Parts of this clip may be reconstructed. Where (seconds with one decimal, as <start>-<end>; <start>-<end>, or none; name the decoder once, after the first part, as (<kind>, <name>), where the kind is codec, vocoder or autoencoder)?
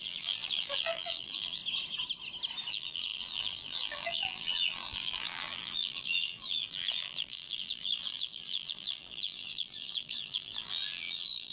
0.0-1.6 (vocoder, BigVGAN v2); 2.7-11.5